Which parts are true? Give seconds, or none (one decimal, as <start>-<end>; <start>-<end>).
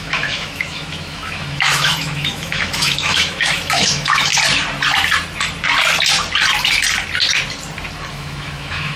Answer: 4.3-8.1